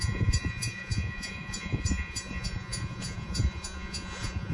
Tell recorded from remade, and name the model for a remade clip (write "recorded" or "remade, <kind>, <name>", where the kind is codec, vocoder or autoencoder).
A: remade, vocoder, Vocos